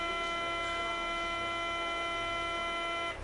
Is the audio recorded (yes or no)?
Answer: yes